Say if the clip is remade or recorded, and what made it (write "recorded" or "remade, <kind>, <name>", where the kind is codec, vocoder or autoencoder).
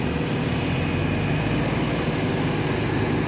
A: recorded